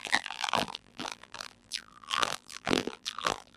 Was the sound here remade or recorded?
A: remade